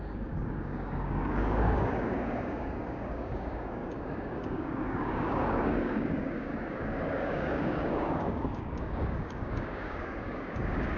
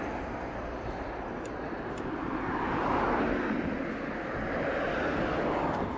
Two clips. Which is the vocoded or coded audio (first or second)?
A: first